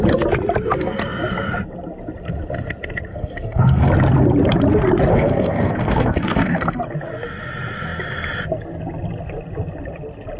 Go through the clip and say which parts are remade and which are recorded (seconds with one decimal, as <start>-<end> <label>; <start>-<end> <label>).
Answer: 0.0-3.1 recorded; 3.1-3.9 remade; 3.9-5.1 recorded; 5.1-6.8 remade; 6.8-10.4 recorded